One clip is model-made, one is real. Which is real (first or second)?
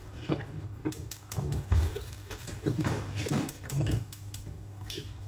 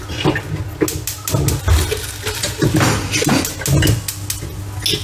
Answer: second